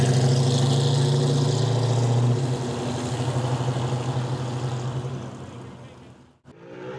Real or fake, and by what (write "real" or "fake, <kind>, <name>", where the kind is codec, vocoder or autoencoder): real